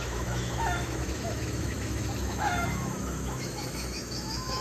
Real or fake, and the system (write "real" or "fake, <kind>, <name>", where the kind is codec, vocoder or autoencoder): fake, autoencoder, DAC-VAE